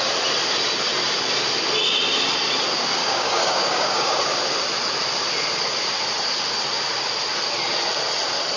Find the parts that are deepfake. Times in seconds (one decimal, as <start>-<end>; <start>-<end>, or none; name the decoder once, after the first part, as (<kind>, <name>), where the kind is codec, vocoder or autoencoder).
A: 3.0-4.2 (codec, DAC)